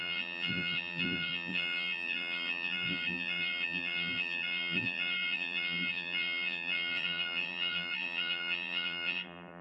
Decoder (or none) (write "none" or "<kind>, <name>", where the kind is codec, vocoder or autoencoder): vocoder, BigVGAN v2